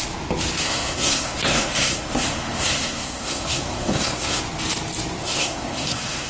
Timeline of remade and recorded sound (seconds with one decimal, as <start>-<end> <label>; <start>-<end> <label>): 0.0-0.6 recorded; 0.6-4.4 remade; 4.4-5.2 recorded; 5.2-6.3 remade